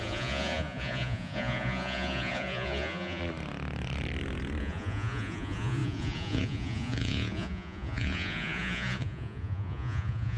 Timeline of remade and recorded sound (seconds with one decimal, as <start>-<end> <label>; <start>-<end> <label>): 0.0-3.2 remade; 3.2-4.6 recorded; 4.6-10.4 remade